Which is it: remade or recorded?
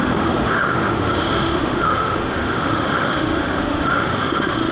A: remade